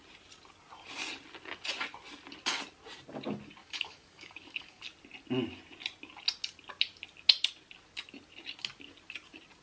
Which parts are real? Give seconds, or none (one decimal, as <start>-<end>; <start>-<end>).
0.0-3.6; 4.8-9.6